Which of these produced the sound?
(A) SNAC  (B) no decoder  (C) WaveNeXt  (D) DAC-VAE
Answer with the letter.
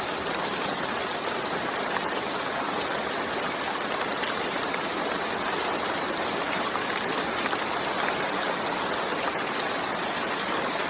B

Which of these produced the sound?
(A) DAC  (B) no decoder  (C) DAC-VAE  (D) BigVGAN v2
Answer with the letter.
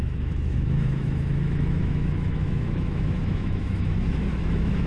C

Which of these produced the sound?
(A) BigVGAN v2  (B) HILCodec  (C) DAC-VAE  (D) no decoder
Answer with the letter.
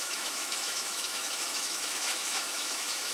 C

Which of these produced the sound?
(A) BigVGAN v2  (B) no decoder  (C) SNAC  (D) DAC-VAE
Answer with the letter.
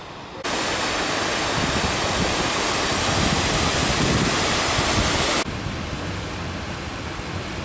B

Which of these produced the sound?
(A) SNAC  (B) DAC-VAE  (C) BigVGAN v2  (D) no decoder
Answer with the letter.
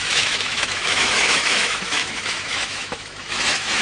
B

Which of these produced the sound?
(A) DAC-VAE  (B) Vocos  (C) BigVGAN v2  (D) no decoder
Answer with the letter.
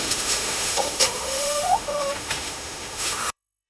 A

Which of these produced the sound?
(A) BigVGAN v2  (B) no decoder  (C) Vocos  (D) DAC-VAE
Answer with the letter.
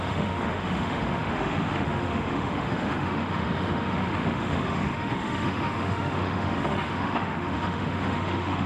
D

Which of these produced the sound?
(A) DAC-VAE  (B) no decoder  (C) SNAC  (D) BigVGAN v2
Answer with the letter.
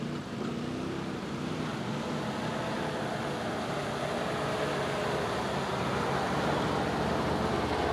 B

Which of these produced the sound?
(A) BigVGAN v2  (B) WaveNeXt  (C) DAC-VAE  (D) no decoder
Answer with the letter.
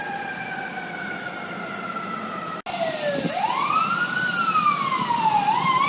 D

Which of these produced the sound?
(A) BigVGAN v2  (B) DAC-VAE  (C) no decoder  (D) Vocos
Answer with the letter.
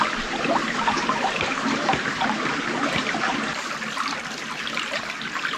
C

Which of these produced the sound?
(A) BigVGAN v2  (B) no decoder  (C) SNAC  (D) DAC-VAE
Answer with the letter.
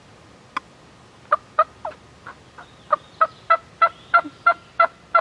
B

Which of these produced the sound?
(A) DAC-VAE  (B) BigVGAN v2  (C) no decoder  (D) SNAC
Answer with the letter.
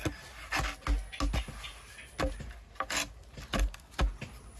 C